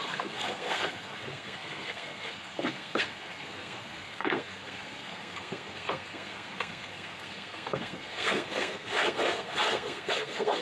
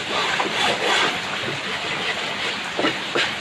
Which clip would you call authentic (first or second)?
second